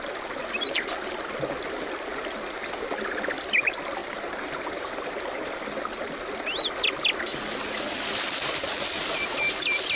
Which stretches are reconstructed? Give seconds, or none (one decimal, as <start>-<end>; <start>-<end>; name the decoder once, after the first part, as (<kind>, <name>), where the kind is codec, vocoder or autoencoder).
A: 4.0-4.9 (vocoder, BigVGAN v2)